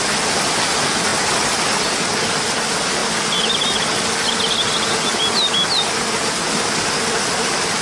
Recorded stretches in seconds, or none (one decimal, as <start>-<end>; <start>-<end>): 0.0-7.8